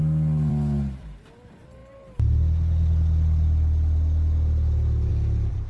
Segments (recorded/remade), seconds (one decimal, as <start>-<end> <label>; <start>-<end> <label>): 0.0-0.5 recorded; 0.5-1.8 remade; 1.8-5.1 recorded; 5.1-5.7 remade